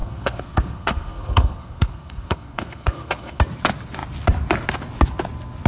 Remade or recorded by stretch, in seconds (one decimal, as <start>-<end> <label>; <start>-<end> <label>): 0.0-3.4 remade; 3.4-5.7 recorded

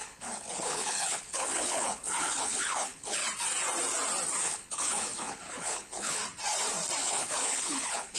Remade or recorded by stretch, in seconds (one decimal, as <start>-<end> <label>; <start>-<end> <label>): 0.0-3.2 remade; 3.2-4.4 recorded; 4.4-6.2 remade; 6.2-7.0 recorded; 7.0-8.2 remade

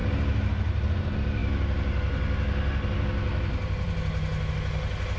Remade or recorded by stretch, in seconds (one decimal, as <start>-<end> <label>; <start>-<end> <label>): 0.0-5.2 recorded